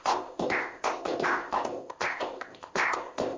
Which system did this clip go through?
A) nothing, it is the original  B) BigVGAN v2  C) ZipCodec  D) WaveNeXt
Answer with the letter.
C